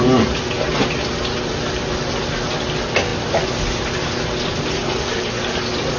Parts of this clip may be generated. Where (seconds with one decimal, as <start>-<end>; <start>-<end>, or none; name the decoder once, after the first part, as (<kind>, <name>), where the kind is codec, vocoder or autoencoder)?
none